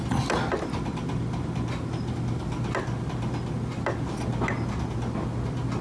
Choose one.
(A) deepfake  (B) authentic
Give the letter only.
B